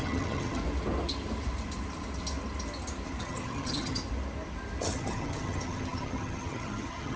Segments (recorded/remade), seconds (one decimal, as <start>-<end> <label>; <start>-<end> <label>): 0.0-0.6 remade; 0.6-3.2 recorded; 3.2-4.0 remade; 4.0-4.8 recorded; 4.8-7.2 remade